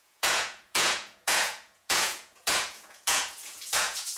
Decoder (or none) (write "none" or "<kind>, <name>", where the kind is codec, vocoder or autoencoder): vocoder, Vocos